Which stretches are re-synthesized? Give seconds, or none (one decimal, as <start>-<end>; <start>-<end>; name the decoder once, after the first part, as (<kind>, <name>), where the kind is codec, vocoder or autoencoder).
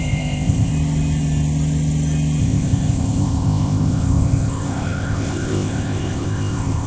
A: 0.0-0.7 (codec, ZipCodec); 2.4-6.9